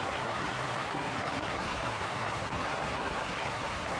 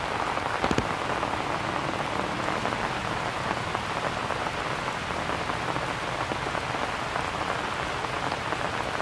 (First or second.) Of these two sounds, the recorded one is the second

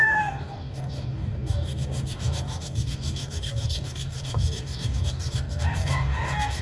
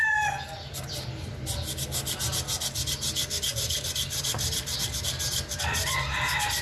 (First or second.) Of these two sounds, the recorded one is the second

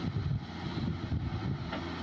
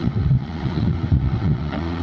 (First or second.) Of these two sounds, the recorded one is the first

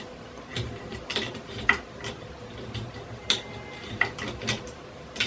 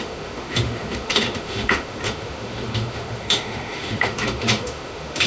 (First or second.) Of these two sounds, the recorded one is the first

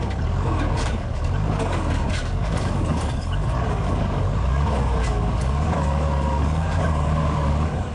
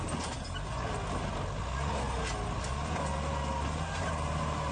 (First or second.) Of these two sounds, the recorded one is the second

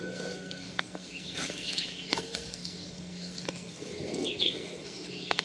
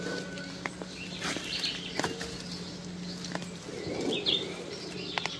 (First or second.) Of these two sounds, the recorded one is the second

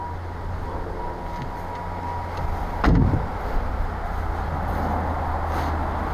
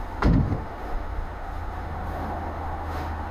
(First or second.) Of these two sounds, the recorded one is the first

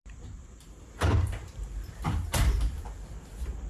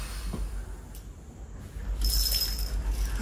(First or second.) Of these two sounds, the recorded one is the second